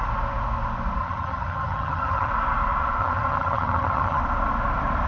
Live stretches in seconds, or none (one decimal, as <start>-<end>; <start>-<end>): 0.0-1.0; 2.3-3.0; 4.2-5.1